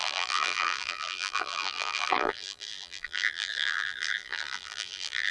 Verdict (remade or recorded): remade